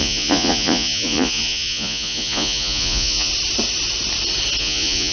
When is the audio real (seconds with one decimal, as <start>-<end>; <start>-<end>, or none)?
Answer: 3.3-4.6